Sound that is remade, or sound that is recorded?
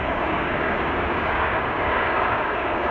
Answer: remade